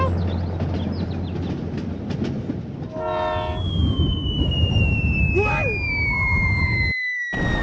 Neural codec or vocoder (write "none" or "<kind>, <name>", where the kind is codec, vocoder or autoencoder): none